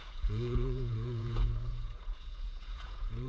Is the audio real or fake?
fake